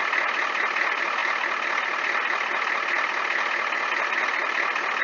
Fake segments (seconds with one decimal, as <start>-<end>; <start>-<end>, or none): none